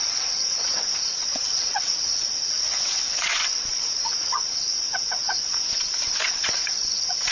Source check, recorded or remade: remade